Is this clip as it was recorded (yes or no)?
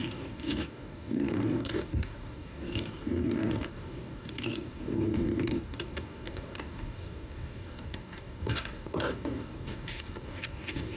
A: no